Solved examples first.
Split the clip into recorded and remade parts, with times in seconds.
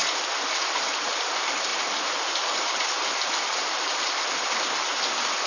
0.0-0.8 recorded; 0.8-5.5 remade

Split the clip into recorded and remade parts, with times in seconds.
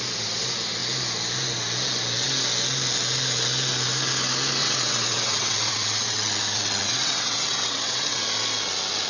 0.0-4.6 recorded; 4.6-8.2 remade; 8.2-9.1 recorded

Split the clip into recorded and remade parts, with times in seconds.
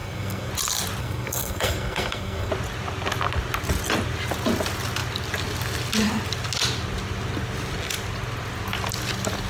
0.0-0.5 remade; 0.5-1.0 recorded; 1.0-2.5 remade; 2.5-9.5 recorded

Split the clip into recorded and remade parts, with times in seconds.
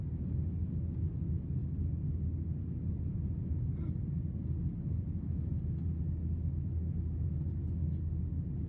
0.0-8.7 recorded